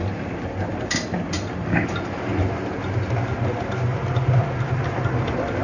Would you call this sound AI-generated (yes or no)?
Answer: no